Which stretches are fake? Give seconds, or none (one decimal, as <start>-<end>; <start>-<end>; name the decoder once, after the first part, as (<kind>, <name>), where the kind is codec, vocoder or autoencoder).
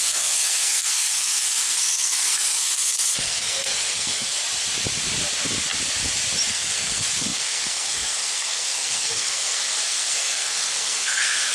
0.0-4.4 (codec, SNAC); 6.5-11.5